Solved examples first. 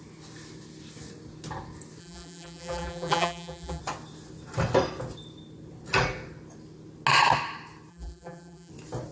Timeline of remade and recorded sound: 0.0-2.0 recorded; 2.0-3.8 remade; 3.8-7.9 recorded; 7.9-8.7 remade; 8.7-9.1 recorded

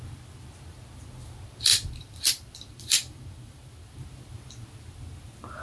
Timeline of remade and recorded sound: 0.0-1.7 recorded; 1.7-4.0 remade; 4.0-5.6 recorded

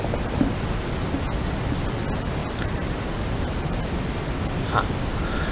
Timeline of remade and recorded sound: 0.0-2.4 recorded; 2.4-3.8 remade; 3.8-5.5 recorded

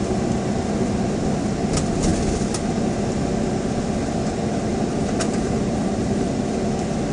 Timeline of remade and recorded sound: 0.0-4.7 recorded; 4.7-6.5 remade; 6.5-7.1 recorded

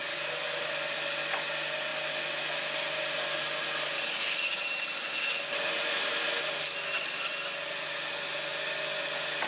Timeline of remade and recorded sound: 0.0-9.5 recorded

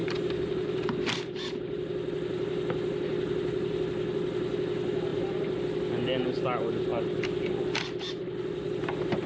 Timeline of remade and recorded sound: 0.0-0.8 remade; 0.8-5.1 recorded; 5.1-5.6 remade; 5.6-9.3 recorded

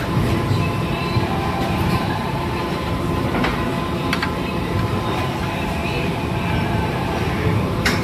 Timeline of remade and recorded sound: 0.0-5.8 remade; 5.8-6.9 recorded; 6.9-8.0 remade

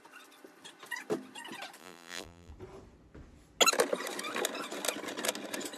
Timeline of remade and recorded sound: 0.0-1.8 recorded; 1.8-2.5 remade; 2.5-5.8 recorded